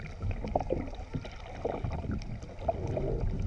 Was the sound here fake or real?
real